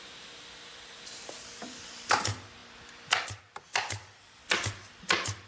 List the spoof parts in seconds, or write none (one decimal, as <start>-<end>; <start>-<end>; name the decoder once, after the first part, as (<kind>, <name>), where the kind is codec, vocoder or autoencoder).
none